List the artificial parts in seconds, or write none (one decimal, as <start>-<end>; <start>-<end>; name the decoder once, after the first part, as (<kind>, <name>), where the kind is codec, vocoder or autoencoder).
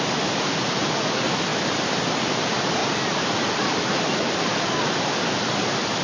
none